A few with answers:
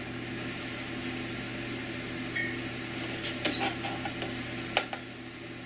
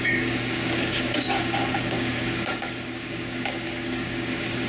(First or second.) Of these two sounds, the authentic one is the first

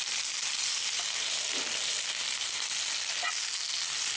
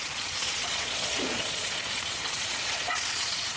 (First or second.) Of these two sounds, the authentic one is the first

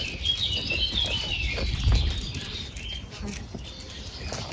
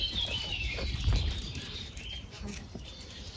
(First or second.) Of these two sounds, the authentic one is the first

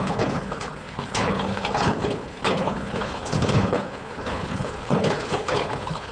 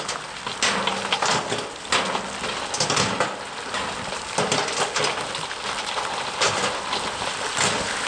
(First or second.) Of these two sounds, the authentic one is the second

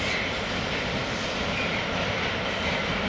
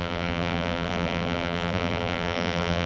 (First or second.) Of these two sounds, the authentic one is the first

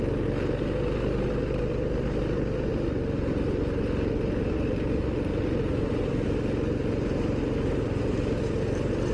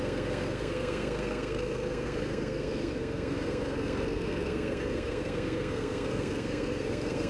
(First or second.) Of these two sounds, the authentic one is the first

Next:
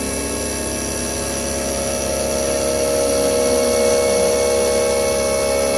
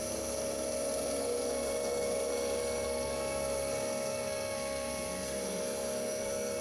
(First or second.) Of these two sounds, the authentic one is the first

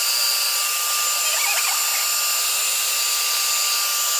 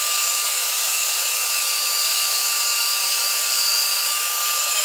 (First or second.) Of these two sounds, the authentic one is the first